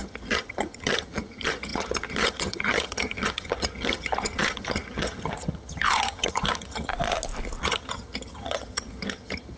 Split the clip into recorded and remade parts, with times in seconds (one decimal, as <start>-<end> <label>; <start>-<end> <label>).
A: 0.0-6.9 remade; 6.9-7.6 recorded; 7.6-9.6 remade